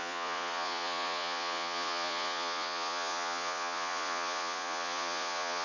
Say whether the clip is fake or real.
fake